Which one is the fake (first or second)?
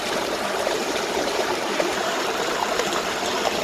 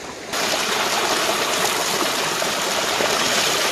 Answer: first